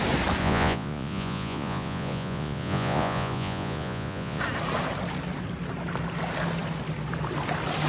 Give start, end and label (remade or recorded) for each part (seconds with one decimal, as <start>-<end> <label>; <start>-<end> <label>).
0.0-0.4 recorded; 0.4-4.4 remade; 4.4-7.9 recorded